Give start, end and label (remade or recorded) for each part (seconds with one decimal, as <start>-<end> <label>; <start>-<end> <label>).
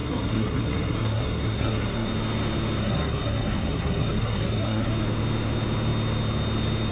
0.0-2.1 remade; 2.1-2.8 recorded; 2.8-4.9 remade; 4.9-6.9 recorded